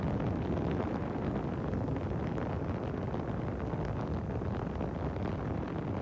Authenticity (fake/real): real